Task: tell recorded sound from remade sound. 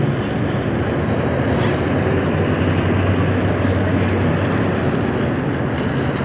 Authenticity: recorded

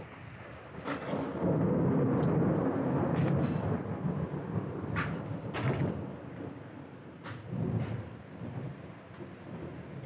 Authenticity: recorded